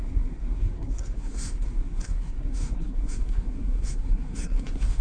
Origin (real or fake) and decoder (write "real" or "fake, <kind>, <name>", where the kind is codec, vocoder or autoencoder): fake, codec, SNAC